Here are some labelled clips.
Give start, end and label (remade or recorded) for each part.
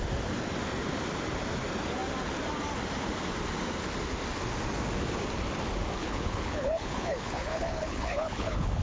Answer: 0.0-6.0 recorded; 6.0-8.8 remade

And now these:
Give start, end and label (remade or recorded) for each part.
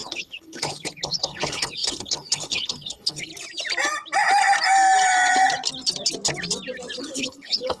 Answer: 0.0-3.3 remade; 3.3-7.0 recorded; 7.0-7.8 remade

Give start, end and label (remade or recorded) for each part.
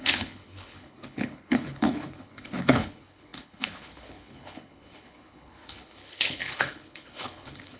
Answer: 0.0-7.8 remade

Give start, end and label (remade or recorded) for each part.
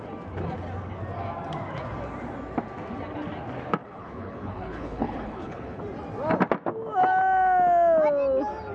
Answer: 0.0-3.8 recorded; 3.8-5.8 remade; 5.8-8.7 recorded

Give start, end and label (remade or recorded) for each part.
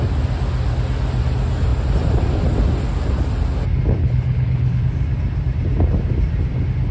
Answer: 0.0-4.0 recorded; 4.0-4.8 remade; 4.8-6.9 recorded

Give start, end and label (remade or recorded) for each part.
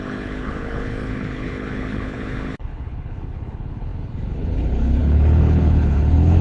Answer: 0.0-6.4 remade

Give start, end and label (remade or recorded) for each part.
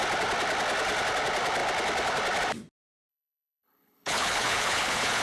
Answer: 0.0-3.1 recorded; 3.1-5.2 remade